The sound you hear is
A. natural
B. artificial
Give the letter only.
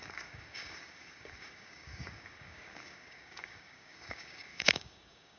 B